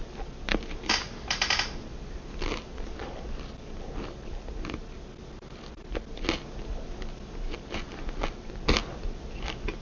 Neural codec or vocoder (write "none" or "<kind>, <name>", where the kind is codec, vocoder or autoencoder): none